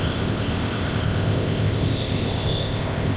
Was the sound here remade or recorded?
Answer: remade